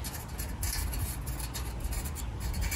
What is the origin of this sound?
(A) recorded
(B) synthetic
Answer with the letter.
A